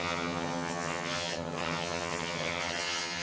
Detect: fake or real fake